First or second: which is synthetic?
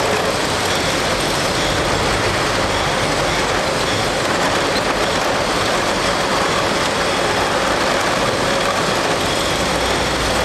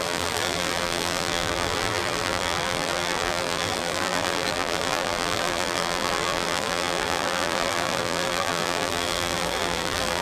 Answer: second